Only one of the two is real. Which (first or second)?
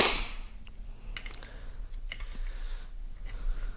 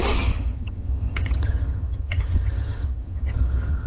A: first